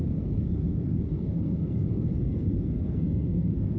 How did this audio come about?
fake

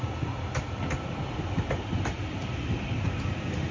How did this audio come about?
real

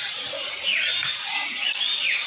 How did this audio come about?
real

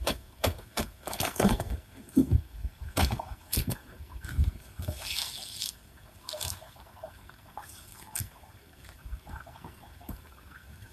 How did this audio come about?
fake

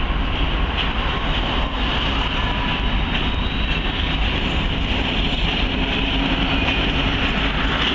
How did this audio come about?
real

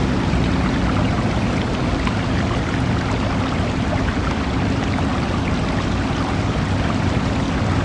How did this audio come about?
real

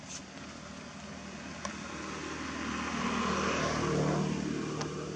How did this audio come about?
real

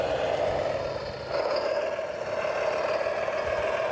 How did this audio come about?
real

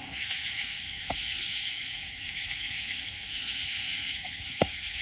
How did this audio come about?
fake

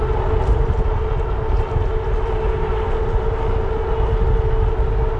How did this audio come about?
real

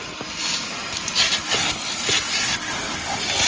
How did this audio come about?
real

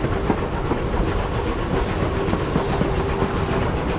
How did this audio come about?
real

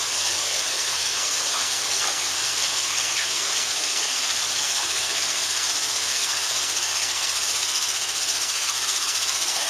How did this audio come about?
fake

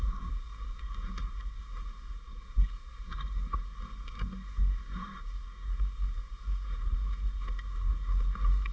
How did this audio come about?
fake